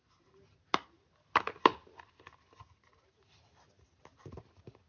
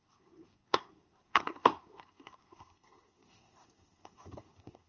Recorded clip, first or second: first